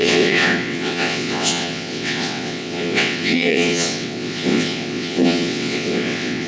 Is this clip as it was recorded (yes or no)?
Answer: no